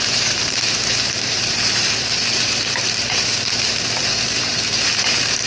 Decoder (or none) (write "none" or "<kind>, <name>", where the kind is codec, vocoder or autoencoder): vocoder, BigVGAN v2